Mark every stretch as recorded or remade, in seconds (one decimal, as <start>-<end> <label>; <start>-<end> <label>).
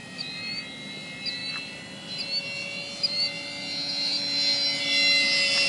0.0-5.7 recorded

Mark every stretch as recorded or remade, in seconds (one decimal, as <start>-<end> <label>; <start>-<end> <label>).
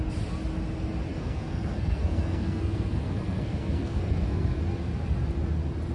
0.0-1.1 recorded; 1.1-4.6 remade; 4.6-5.9 recorded